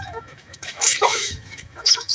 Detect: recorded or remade remade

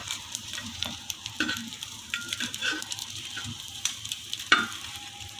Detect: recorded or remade remade